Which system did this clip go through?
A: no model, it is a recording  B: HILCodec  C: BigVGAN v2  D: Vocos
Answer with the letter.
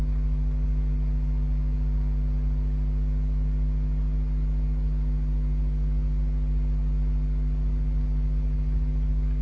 A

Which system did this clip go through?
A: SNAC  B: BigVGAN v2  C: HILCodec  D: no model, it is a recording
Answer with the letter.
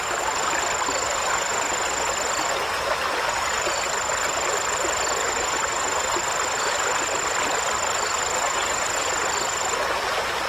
D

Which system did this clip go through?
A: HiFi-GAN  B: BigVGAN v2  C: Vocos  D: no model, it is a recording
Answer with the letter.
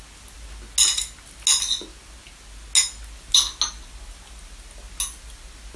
D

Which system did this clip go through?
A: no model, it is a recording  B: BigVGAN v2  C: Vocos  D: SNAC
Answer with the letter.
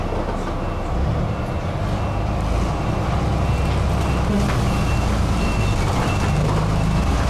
A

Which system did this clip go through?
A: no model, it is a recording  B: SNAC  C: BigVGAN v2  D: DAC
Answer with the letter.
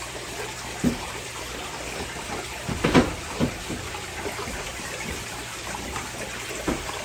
C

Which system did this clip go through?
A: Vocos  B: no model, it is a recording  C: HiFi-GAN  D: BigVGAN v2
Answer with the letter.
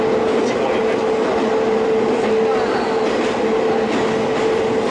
B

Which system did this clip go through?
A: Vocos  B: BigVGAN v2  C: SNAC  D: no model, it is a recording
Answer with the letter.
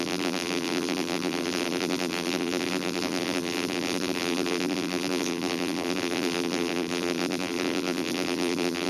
B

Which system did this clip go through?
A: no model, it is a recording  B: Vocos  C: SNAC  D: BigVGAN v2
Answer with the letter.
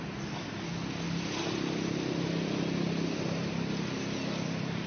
A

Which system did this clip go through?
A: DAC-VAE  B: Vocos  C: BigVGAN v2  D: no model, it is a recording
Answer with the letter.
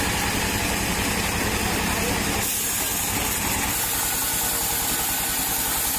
D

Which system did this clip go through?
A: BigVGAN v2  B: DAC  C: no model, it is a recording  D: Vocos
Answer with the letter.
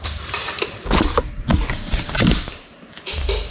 A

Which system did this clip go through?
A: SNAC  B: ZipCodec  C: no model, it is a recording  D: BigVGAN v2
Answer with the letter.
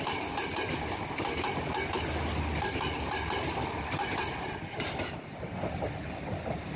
C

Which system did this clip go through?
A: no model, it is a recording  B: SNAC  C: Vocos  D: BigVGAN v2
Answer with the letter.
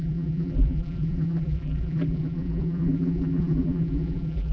D